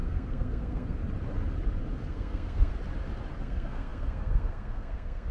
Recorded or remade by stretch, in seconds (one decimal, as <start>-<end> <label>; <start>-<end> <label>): 0.0-1.0 remade; 1.0-2.1 recorded; 2.1-2.7 remade; 2.7-3.4 recorded; 3.4-5.3 remade